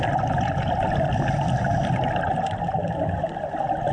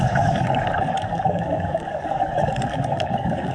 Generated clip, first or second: second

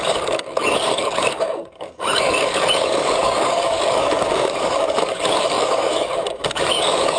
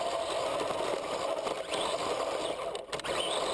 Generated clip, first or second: first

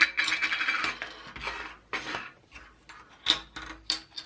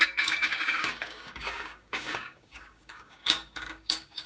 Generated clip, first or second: second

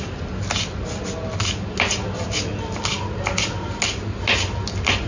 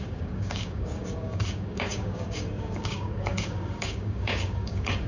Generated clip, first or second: second